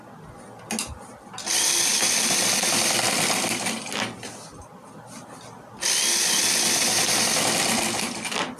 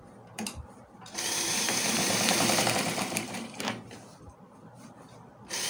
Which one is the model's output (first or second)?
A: second